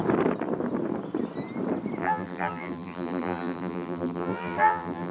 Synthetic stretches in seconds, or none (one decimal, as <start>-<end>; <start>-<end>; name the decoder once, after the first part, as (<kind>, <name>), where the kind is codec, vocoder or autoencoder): 2.0-5.1 (vocoder, BigVGAN v2)